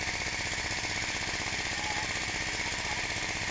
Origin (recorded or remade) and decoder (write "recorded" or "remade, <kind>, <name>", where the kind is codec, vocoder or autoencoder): recorded